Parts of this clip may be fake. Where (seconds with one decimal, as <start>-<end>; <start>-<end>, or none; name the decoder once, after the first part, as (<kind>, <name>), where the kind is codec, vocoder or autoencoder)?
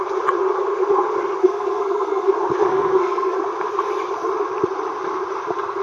1.4-2.3 (codec, SNAC); 2.7-3.4